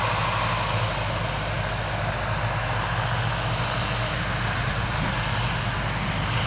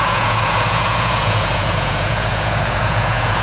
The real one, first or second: first